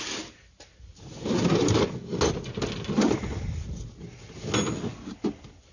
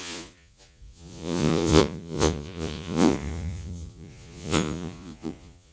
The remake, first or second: second